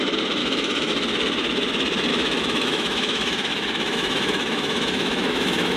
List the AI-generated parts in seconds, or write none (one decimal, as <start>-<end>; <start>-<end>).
0.4-0.9; 2.1-5.8